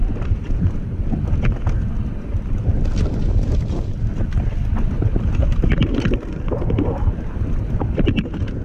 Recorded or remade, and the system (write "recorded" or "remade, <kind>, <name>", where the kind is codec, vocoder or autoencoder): recorded